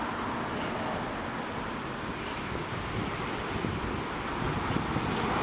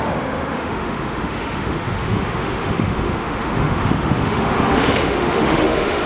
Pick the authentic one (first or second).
first